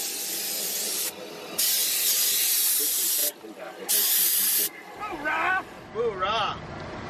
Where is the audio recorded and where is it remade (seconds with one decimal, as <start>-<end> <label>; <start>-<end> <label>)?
0.0-7.1 recorded